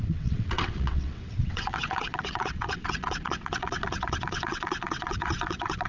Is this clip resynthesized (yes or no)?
yes